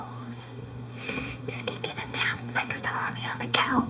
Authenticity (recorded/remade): remade